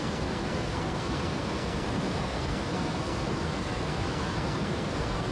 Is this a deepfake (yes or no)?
yes